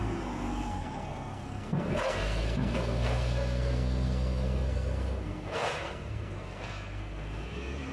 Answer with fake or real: fake